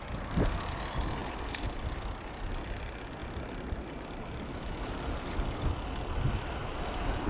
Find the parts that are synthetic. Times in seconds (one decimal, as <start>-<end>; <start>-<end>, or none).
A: 1.2-2.5